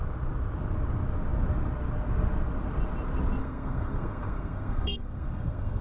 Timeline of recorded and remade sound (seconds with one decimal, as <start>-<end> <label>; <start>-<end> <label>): 0.0-3.4 recorded; 3.4-5.8 remade